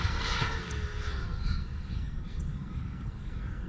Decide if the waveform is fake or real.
fake